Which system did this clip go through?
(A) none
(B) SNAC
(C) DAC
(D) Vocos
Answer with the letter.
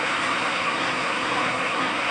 B